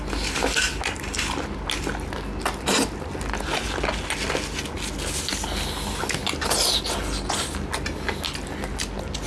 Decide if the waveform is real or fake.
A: real